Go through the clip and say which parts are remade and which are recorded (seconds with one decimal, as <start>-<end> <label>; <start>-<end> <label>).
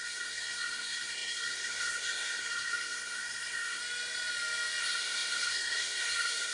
0.0-3.8 remade; 3.8-4.8 recorded; 4.8-6.5 remade